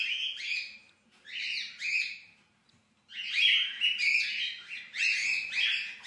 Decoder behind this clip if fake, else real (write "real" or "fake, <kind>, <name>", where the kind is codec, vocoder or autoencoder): real